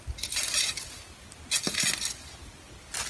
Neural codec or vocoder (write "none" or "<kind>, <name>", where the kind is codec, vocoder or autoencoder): none